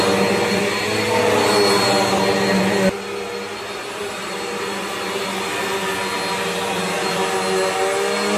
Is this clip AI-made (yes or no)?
no